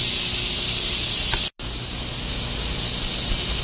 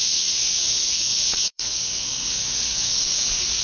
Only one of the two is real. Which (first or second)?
first